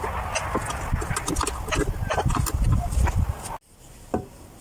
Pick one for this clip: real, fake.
real